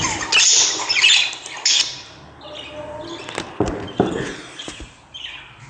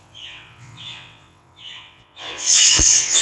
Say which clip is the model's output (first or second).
second